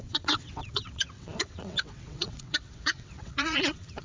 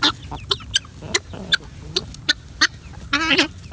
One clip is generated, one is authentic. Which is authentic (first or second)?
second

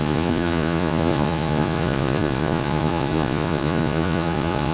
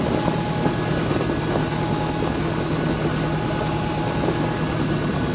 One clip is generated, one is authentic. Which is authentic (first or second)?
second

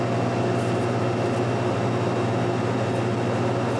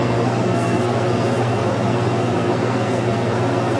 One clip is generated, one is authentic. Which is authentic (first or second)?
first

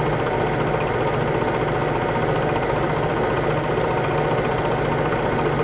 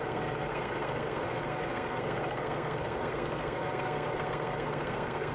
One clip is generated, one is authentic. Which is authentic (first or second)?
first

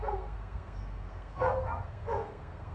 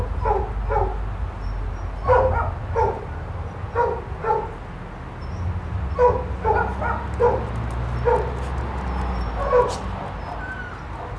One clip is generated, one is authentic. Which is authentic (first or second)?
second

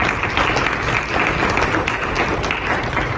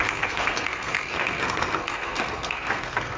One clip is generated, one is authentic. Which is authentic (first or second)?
first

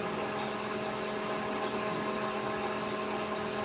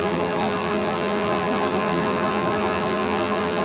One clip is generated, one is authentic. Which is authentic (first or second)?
first